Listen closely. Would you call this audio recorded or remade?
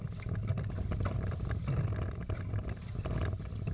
recorded